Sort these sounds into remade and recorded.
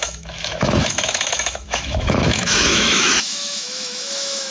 remade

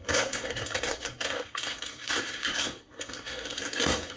remade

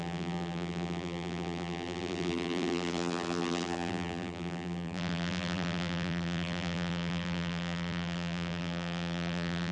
remade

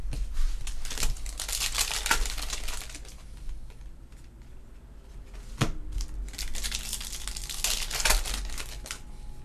recorded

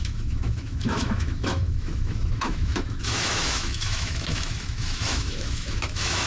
remade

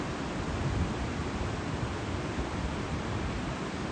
recorded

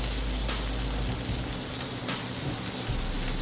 recorded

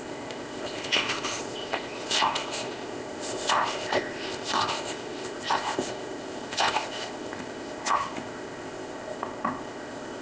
remade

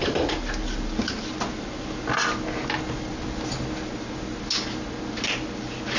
recorded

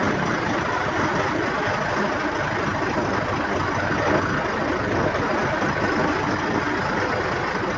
recorded